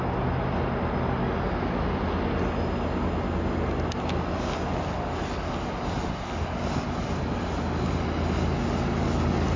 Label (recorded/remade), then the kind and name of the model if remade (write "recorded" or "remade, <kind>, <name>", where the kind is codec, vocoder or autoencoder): recorded